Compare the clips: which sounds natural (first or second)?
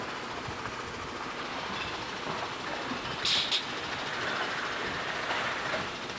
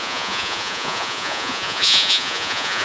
first